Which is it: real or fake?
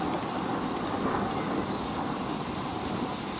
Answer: real